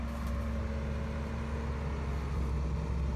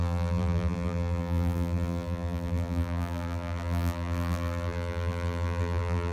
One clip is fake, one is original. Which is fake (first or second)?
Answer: second